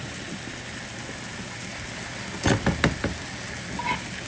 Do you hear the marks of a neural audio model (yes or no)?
no